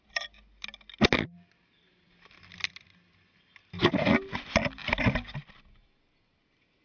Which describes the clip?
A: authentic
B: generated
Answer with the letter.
A